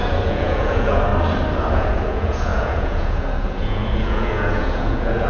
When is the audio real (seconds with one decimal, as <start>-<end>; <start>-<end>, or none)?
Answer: 1.1-1.7